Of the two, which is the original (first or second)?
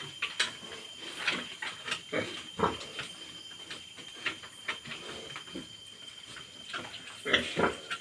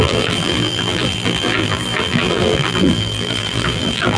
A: first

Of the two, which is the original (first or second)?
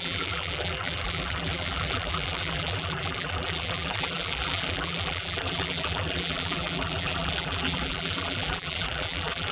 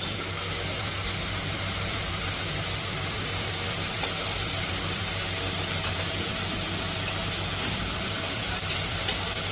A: second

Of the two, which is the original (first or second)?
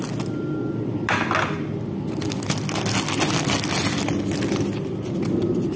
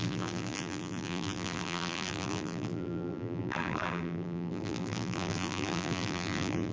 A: first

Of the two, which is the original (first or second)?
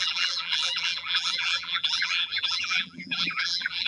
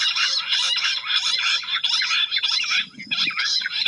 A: second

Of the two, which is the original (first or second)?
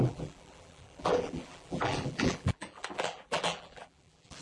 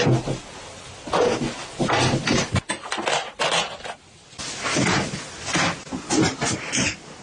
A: second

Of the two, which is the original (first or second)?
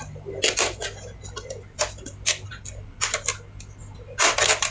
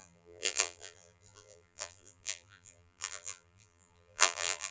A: first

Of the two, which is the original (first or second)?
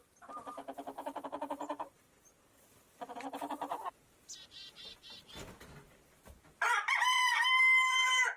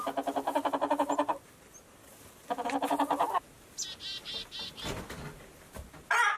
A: second